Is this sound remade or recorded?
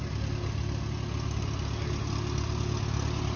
recorded